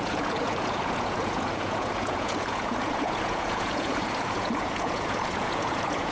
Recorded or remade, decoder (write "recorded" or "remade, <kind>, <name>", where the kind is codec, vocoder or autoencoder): remade, vocoder, Vocos